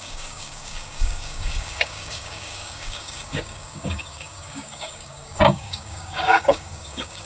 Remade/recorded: remade